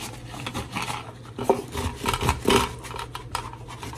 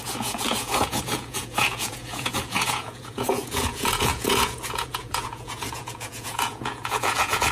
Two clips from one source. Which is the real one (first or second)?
first